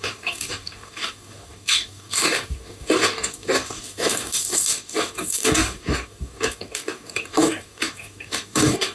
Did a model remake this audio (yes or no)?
yes